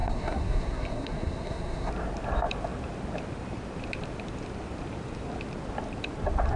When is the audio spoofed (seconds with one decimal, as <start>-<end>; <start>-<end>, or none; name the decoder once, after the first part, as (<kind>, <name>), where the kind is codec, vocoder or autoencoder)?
0.0-1.9 (codec, SNAC)